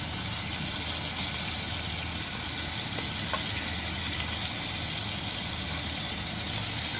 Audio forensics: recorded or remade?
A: recorded